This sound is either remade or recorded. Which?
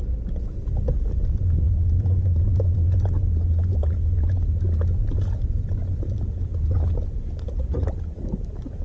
recorded